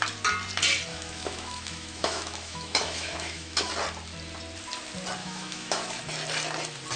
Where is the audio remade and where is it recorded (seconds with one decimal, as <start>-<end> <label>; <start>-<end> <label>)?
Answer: 0.0-0.9 recorded; 0.9-3.7 remade; 3.7-5.2 recorded; 5.2-6.0 remade; 6.0-7.0 recorded

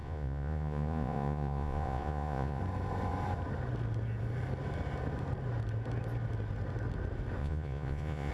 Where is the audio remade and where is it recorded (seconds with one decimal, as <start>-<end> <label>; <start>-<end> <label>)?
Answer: 0.0-2.6 remade; 2.6-7.4 recorded; 7.4-8.3 remade

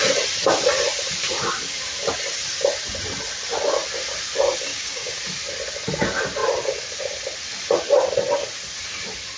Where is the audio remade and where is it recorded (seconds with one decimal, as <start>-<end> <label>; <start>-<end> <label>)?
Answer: 0.0-4.7 recorded; 4.7-5.2 remade; 5.2-9.4 recorded

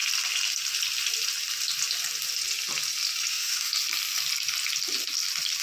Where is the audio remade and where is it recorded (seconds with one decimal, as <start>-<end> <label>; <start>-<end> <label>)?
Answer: 0.0-3.3 recorded; 3.3-3.7 remade; 3.7-5.6 recorded

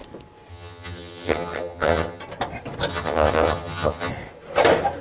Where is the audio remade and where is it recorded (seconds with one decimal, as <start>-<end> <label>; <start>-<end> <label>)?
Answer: 0.0-0.5 recorded; 0.5-2.2 remade; 2.2-2.9 recorded; 2.9-4.1 remade; 4.1-5.0 recorded

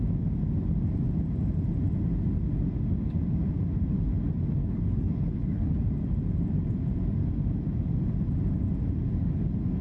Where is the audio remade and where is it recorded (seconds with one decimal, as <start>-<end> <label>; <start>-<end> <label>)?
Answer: 0.0-4.6 recorded; 4.6-5.7 remade; 5.7-9.8 recorded

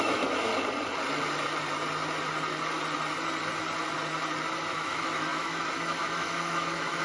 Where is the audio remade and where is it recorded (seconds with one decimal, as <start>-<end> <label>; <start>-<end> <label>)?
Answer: 0.0-0.5 remade; 0.5-4.7 recorded; 4.7-7.0 remade